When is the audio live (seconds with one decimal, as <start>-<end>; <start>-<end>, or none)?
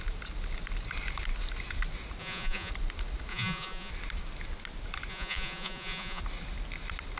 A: 0.0-2.2; 2.7-3.3; 3.9-5.1; 6.2-7.2